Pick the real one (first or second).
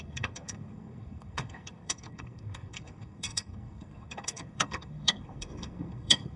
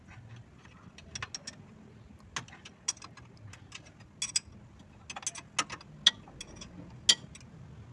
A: second